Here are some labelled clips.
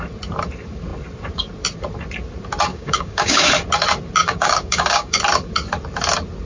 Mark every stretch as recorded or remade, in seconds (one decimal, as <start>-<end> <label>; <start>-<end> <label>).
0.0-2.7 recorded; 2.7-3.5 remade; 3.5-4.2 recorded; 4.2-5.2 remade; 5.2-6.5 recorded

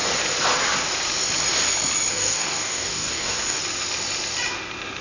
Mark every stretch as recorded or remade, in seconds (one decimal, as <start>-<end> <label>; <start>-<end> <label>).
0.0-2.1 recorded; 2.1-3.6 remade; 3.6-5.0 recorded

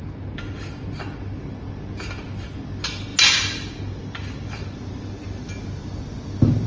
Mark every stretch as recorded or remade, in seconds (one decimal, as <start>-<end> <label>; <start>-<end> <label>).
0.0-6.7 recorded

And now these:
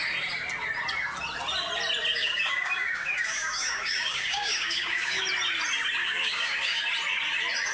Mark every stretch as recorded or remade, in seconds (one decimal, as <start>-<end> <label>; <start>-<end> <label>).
0.0-2.1 recorded; 2.1-5.2 remade; 5.2-6.0 recorded; 6.0-6.8 remade; 6.8-7.7 recorded

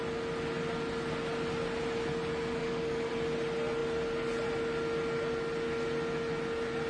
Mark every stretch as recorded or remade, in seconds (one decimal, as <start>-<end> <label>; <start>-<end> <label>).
0.0-2.6 recorded; 2.6-3.1 remade; 3.1-6.9 recorded